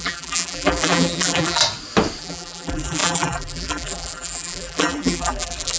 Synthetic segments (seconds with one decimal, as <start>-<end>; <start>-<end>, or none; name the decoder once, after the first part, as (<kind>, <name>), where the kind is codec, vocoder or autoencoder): 0.0-1.6 (vocoder, BigVGAN v2); 2.2-5.8